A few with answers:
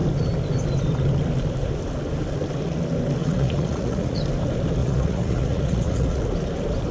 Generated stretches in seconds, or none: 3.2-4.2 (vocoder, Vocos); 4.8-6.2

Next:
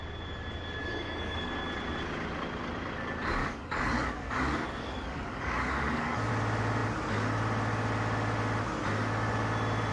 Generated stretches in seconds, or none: 0.8-1.5 (codec, DAC); 3.4-6.3

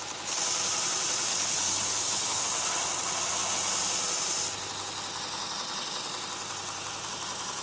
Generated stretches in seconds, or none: 1.3-2.4 (codec, HILCodec)

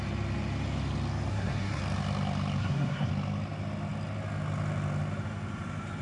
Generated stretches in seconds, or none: 1.3-1.8 (codec, SNAC); 2.6-3.1

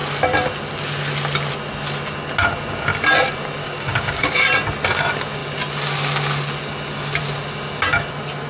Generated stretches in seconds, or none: 3.6-4.3 (codec, DAC)

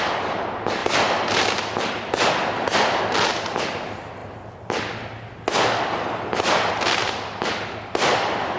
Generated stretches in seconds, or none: 0.8-2.3 (vocoder, BigVGAN v2)

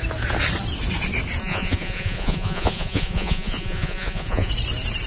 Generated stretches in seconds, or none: 1.4-4.5 (vocoder, Vocos)

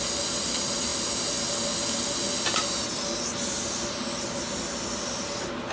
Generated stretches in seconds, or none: none